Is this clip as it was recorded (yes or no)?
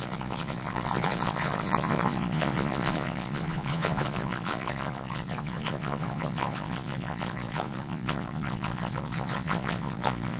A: no